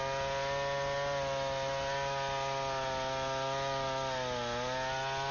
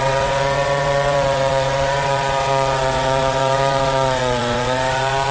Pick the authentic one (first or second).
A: first